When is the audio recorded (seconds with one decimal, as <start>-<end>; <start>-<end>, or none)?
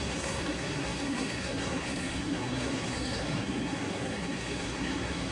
none